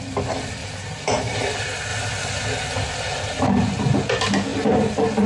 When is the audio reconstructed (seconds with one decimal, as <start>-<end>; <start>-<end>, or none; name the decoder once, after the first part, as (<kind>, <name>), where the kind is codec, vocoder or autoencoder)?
0.6-1.4 (vocoder, BigVGAN v2)